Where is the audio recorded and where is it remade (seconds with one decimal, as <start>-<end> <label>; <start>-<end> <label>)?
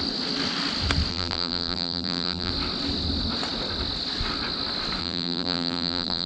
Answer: 0.0-1.1 recorded; 1.1-2.5 remade; 2.5-5.0 recorded; 5.0-6.3 remade